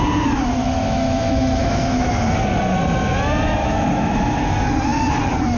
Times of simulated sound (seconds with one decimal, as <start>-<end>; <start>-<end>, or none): 0.6-2.1; 3.6-4.5